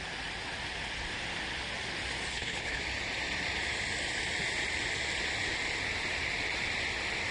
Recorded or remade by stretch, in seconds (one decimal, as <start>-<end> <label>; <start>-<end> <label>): 0.0-2.3 recorded; 2.3-2.8 remade; 2.8-7.3 recorded